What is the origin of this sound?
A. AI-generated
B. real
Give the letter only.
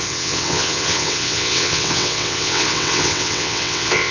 A